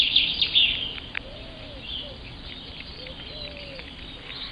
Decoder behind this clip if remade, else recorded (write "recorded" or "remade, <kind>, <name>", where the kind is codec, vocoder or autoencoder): recorded